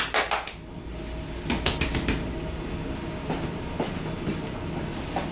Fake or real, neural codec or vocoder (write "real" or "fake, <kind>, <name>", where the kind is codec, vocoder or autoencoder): real